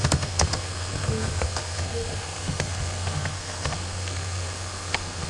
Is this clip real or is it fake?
fake